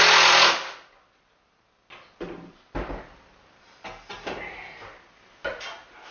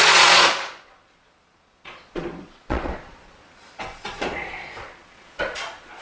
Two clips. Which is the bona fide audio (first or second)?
first